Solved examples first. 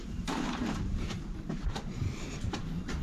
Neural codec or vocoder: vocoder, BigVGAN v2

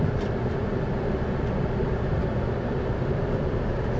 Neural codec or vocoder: vocoder, BigVGAN v2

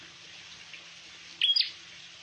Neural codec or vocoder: none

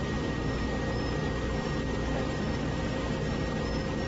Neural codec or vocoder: none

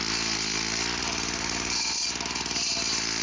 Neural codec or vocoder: none